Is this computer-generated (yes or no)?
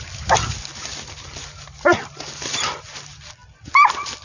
yes